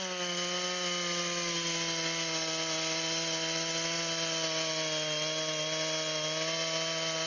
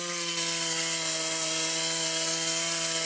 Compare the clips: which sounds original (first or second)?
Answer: first